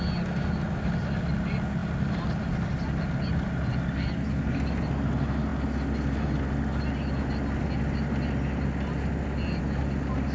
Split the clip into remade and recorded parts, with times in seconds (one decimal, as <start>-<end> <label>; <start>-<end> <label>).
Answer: 0.0-10.3 recorded